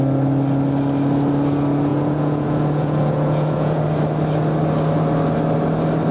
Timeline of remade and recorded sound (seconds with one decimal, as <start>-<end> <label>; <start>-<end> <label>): 0.0-1.9 recorded; 1.9-3.8 remade; 3.8-6.1 recorded